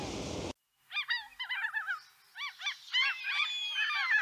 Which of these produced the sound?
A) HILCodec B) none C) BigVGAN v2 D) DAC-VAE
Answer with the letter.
B